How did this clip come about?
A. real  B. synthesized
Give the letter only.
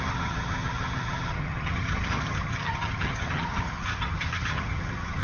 B